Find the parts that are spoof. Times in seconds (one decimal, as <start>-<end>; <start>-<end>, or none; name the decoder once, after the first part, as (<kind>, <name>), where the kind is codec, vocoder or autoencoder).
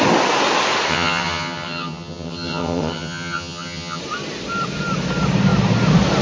0.9-4.0 (vocoder, HiFi-GAN)